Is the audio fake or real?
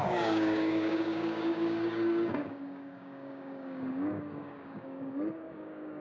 fake